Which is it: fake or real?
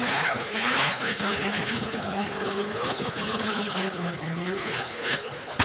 fake